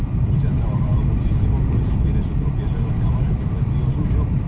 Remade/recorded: recorded